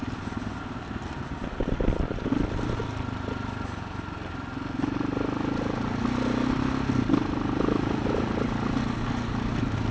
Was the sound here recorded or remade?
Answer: recorded